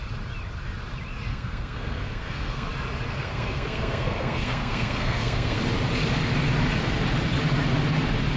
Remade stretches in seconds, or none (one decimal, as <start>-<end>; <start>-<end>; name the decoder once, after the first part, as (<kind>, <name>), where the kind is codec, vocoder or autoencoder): 1.3-2.7 (codec, SNAC); 3.1-5.6